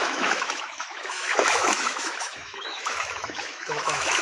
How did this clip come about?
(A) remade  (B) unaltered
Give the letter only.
A